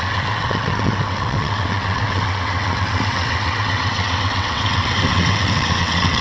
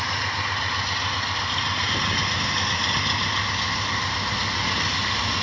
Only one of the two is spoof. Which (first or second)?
first